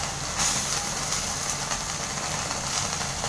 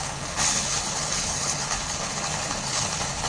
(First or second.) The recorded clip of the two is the first